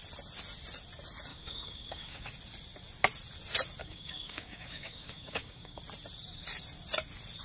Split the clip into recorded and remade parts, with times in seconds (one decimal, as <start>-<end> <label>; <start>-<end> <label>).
0.0-1.3 recorded; 1.3-2.3 remade; 2.3-3.8 recorded; 3.8-5.8 remade; 5.8-7.4 recorded